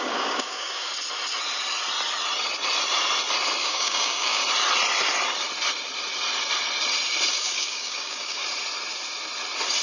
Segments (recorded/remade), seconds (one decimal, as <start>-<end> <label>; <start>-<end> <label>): 0.0-0.9 remade; 0.9-3.6 recorded; 3.6-4.4 remade; 4.4-7.3 recorded; 7.3-8.4 remade; 8.4-9.8 recorded